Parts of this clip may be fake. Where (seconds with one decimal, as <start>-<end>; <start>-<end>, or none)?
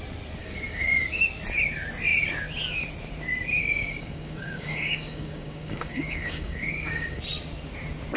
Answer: 0.4-1.2; 3.6-7.2